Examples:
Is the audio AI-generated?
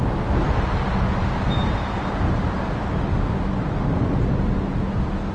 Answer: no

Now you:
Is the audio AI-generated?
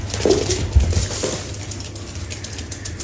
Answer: no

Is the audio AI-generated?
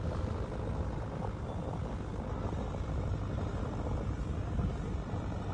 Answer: no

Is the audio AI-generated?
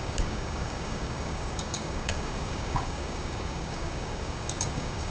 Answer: yes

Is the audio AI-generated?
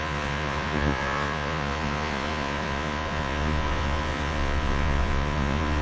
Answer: yes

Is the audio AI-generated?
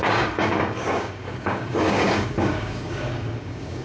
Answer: yes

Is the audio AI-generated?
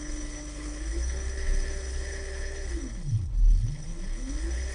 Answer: yes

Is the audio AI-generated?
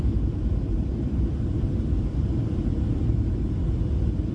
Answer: yes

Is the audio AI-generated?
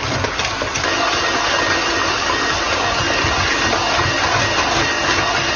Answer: no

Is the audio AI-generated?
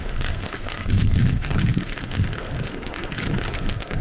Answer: yes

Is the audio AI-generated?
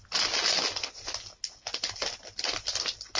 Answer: no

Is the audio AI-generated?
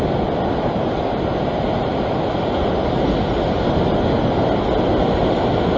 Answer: no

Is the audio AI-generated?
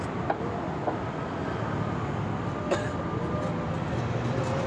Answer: no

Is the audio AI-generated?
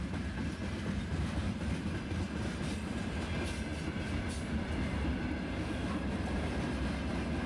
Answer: no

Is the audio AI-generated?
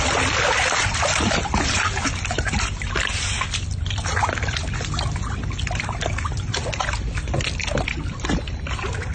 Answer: no